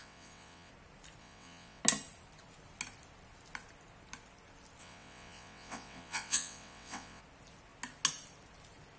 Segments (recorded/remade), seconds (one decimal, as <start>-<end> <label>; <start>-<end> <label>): 0.0-0.7 remade; 0.7-1.2 recorded; 1.2-1.8 remade; 1.8-4.8 recorded; 4.8-7.2 remade; 7.2-9.0 recorded